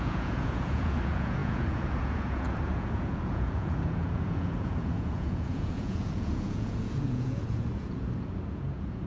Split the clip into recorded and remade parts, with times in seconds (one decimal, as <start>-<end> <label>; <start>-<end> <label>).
0.0-9.1 remade